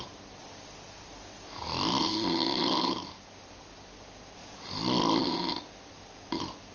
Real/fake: real